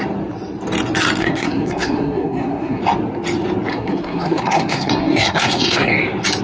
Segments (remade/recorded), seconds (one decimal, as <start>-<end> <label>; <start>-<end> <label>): 0.0-1.2 recorded; 1.2-2.8 remade; 2.8-3.7 recorded; 3.7-5.9 remade; 5.9-6.4 recorded